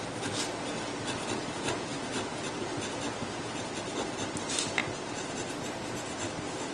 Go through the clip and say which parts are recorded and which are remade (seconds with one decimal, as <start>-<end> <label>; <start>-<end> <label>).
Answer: 0.0-6.7 recorded

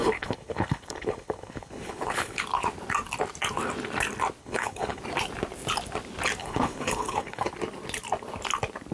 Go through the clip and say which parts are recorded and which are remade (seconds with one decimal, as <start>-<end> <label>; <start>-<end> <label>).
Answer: 0.0-2.4 remade; 2.4-4.4 recorded; 4.4-5.0 remade; 5.0-6.4 recorded; 6.4-7.5 remade; 7.5-8.9 recorded

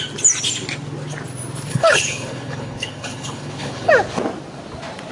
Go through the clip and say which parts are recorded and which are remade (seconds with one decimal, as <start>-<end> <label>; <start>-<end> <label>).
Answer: 0.0-1.7 recorded; 1.7-3.9 remade; 3.9-5.1 recorded